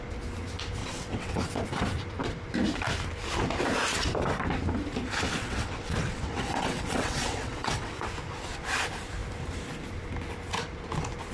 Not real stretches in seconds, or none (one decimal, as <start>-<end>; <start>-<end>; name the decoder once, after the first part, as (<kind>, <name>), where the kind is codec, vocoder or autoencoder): 0.8-1.4 (vocoder, WaveNeXt); 5.4-8.1